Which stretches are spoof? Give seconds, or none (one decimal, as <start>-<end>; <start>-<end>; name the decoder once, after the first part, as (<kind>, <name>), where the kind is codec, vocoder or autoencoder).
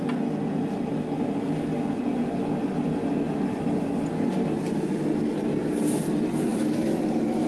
6.5-7.0 (autoencoder, DAC-VAE)